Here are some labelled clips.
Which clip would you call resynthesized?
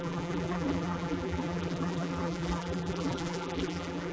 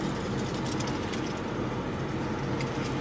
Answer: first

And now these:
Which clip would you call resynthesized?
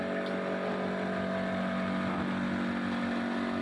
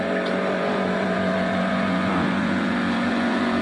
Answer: second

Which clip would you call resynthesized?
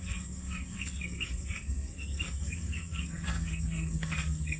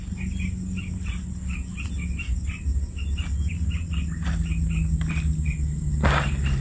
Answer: first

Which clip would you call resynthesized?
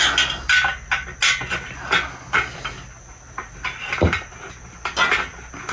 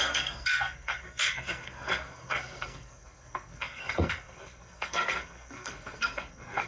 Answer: second